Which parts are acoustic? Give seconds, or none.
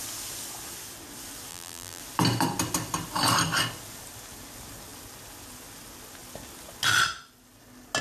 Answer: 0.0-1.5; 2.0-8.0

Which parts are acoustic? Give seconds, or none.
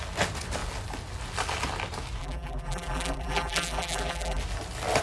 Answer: 0.0-2.2; 4.4-5.0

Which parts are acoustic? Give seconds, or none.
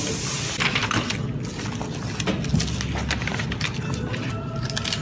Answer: 0.0-5.0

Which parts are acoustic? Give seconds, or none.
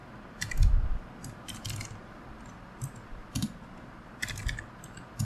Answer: 0.0-5.2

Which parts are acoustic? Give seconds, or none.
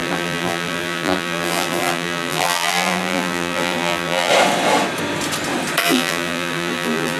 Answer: 4.3-5.8